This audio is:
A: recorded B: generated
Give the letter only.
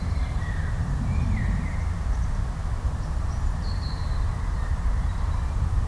B